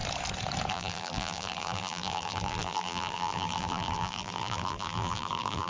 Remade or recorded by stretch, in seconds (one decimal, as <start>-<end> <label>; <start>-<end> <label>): 0.0-0.7 recorded; 0.7-5.7 remade